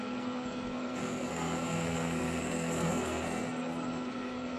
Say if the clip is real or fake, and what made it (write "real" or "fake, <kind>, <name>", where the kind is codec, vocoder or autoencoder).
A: fake, codec, SNAC